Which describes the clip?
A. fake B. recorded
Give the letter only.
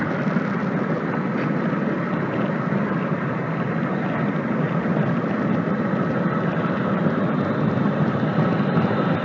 B